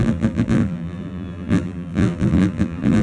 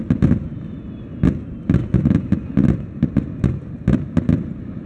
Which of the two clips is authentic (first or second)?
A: second